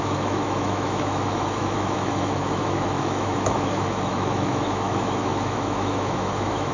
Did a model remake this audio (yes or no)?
yes